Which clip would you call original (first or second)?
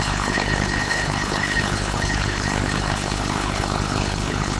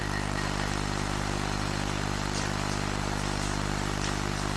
second